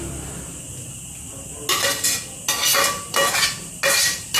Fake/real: real